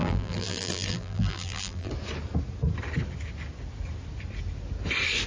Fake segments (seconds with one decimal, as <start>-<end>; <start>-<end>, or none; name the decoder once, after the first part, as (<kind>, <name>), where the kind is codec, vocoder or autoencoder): 0.0-1.9 (vocoder, BigVGAN v2)